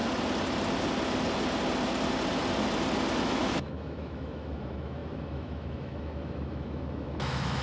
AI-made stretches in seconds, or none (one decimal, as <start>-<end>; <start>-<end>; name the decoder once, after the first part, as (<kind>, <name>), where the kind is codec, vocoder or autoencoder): 3.2-7.6 (autoencoder, DAC-VAE)